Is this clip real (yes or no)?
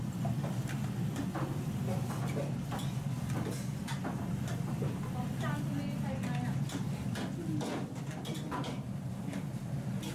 yes